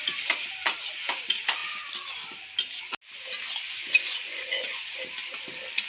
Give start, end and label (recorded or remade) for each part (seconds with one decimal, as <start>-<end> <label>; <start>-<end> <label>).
0.0-3.8 recorded; 3.8-4.8 remade; 4.8-5.9 recorded